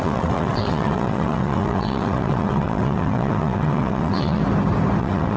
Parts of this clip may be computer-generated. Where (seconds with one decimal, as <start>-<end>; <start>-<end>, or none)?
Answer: 0.0-4.4; 5.0-5.4